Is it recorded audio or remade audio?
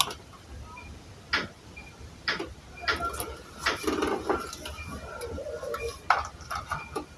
recorded